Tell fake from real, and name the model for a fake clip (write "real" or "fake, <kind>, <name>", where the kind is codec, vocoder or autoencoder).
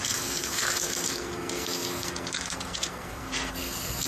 fake, codec, SNAC